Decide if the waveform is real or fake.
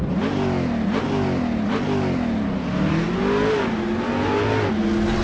real